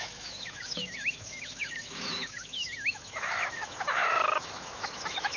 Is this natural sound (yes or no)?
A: no